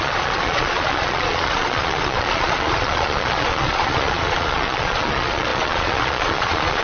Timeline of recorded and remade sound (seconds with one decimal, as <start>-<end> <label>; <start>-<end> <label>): 0.0-6.8 remade